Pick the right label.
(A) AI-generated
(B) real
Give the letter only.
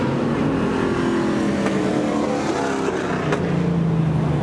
B